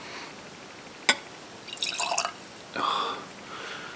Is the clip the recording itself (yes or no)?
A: yes